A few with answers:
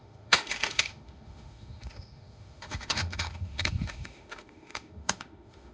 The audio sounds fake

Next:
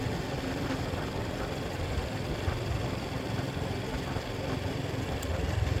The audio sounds real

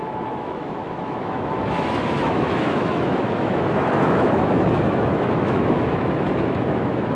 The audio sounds fake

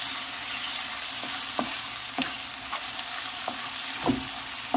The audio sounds real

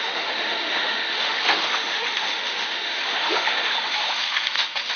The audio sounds fake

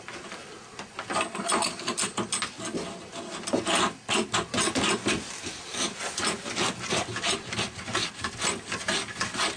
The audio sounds real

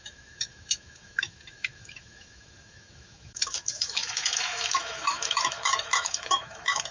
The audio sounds fake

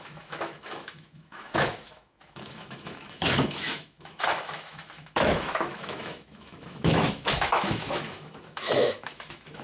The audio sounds fake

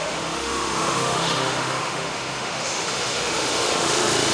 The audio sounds fake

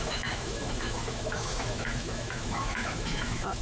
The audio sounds fake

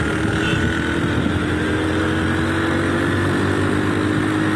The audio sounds real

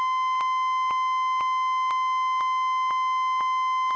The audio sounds real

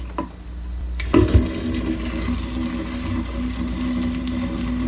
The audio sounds real